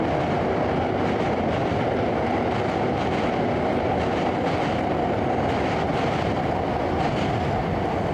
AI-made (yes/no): no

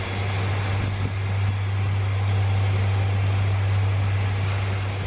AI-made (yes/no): no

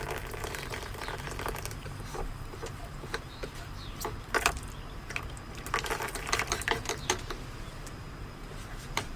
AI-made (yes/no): yes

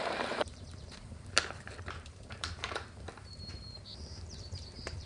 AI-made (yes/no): yes